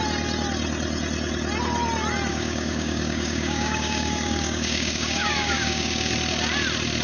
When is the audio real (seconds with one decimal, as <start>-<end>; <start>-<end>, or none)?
0.0-2.3; 6.1-7.0